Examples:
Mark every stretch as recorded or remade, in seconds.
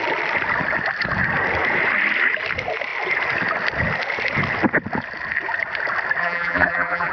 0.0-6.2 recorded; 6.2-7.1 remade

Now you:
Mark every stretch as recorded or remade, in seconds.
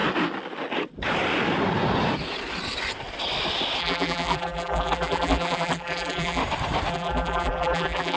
0.0-3.8 recorded; 3.8-6.4 remade; 6.4-6.9 recorded; 6.9-8.2 remade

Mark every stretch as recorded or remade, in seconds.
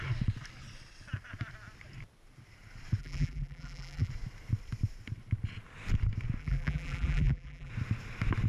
0.0-3.0 recorded; 3.0-4.1 remade; 4.1-6.4 recorded; 6.4-7.7 remade; 7.7-8.5 recorded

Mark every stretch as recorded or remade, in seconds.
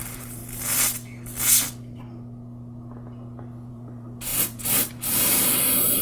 0.0-0.4 remade; 0.4-3.7 recorded; 3.7-6.0 remade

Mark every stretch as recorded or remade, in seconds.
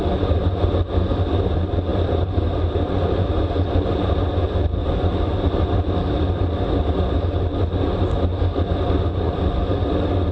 0.0-1.9 recorded; 1.9-3.5 remade; 3.5-10.3 recorded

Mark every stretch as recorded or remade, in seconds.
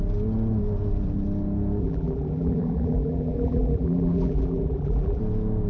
0.0-1.8 recorded; 1.8-5.2 remade; 5.2-5.7 recorded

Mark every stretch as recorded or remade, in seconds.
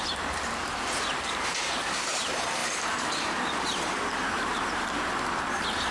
0.0-2.6 remade; 2.6-3.1 recorded; 3.1-5.9 remade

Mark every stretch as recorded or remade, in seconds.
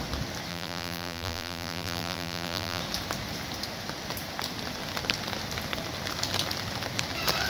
0.0-0.5 recorded; 0.5-2.8 remade; 2.8-7.5 recorded